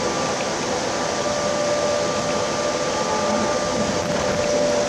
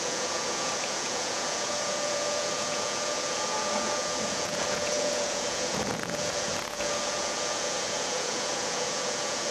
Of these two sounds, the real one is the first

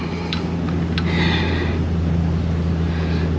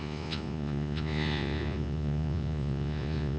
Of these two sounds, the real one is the first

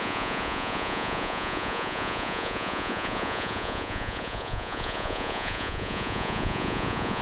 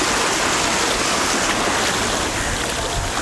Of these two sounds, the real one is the second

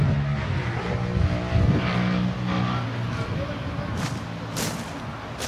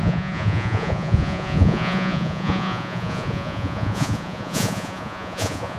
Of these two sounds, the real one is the first